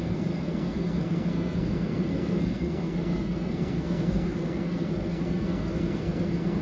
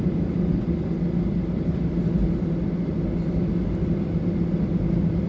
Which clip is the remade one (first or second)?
first